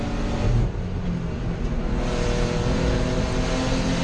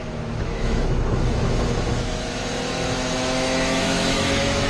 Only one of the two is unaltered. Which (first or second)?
first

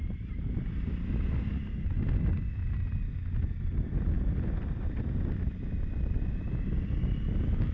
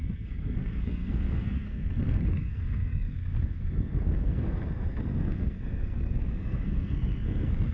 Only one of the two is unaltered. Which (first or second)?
first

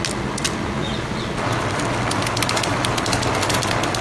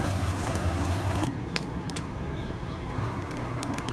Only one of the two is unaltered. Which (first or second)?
first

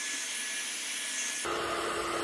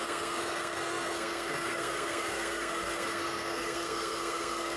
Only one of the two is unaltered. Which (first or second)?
first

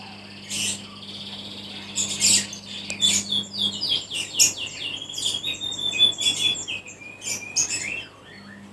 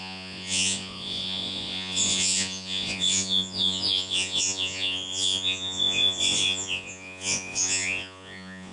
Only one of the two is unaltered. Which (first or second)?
first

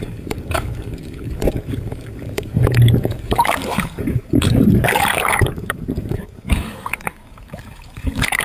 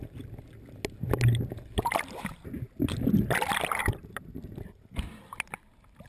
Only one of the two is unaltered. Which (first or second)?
second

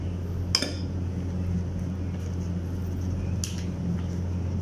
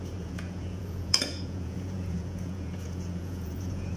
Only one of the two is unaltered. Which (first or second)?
first